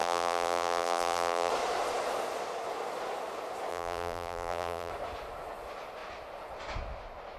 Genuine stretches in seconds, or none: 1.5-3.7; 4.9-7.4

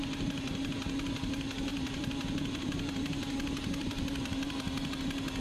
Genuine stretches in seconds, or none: 0.0-1.7; 4.9-5.4